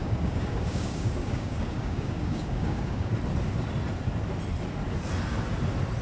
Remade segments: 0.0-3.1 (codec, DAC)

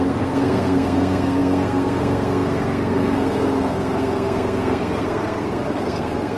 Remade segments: 0.0-6.4 (codec, SNAC)